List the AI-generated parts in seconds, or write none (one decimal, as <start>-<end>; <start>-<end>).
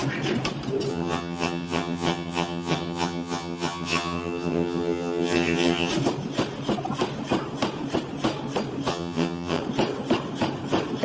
0.9-5.9; 8.9-9.6